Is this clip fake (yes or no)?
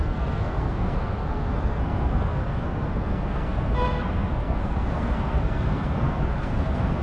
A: yes